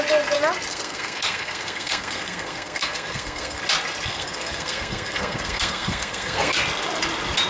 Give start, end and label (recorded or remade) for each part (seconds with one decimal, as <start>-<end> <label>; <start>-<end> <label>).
0.0-0.7 recorded; 0.7-3.6 remade; 3.6-4.1 recorded; 4.1-6.6 remade; 6.6-7.5 recorded